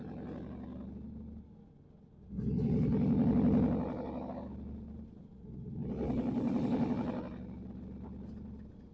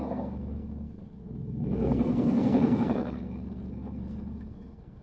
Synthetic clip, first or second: second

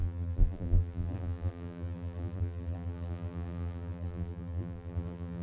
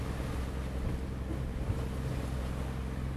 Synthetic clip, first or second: first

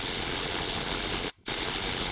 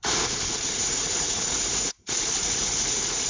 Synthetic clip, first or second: second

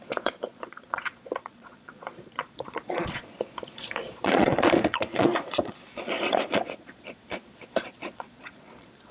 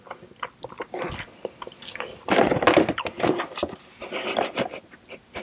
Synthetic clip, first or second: first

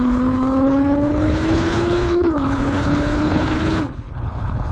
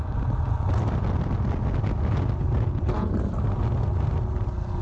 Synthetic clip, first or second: first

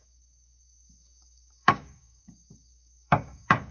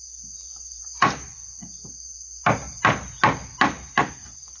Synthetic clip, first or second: first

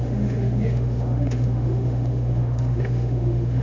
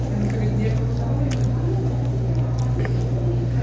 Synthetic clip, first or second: first